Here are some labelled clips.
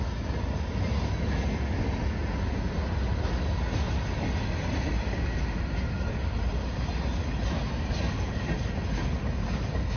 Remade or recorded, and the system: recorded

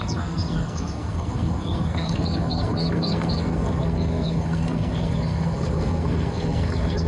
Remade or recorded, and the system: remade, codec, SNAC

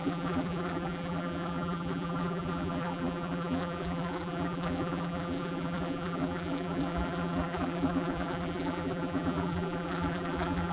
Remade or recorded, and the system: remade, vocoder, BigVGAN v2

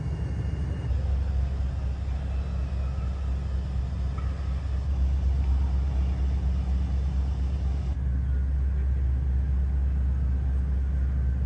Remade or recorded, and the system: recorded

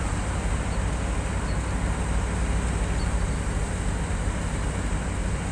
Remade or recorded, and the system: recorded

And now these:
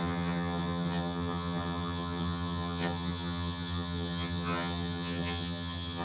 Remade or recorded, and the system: remade, vocoder, HiFi-GAN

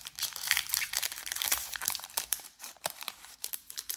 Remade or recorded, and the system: remade, vocoder, BigVGAN v2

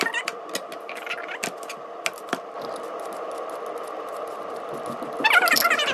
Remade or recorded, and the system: recorded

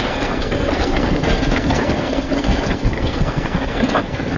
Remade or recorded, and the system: remade, codec, SNAC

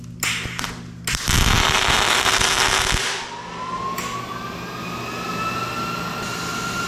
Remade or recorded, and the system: recorded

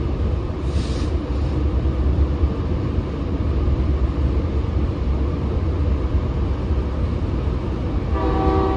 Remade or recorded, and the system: recorded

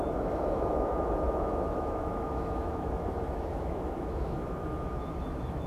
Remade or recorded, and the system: remade, autoencoder, DAC-VAE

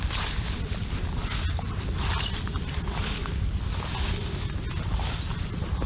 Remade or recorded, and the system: recorded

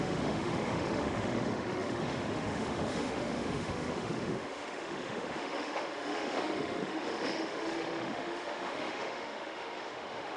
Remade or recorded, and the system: remade, autoencoder, DAC-VAE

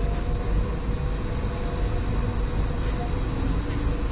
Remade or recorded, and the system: recorded